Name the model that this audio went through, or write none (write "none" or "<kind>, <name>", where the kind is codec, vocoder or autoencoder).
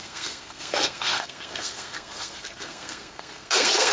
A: codec, SNAC